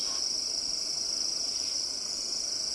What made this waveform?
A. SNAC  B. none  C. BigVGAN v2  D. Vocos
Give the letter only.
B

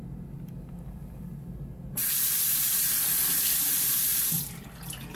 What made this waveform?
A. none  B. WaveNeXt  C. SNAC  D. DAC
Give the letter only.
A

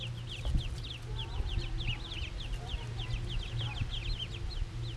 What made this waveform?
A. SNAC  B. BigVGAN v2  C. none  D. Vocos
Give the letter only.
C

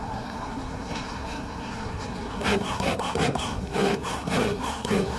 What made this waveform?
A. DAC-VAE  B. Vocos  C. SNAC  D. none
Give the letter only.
C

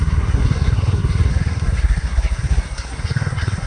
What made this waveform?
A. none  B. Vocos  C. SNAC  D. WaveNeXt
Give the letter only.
C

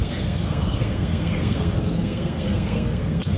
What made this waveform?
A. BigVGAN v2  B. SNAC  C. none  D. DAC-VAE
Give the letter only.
B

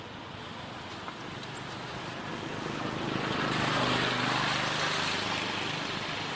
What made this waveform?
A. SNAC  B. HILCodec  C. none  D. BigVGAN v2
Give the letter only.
C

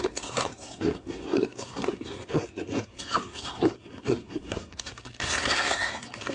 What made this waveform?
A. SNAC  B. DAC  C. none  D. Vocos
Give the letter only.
A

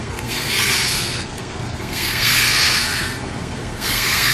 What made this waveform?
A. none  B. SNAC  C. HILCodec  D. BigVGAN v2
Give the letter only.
B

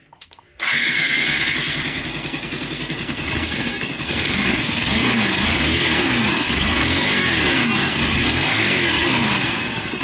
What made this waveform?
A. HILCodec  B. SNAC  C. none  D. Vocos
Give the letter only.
B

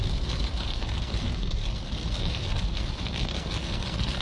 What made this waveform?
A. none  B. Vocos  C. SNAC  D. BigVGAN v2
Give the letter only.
C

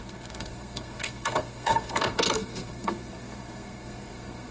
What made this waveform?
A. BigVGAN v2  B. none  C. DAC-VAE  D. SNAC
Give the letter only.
D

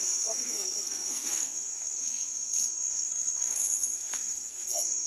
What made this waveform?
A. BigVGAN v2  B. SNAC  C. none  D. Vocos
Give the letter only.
B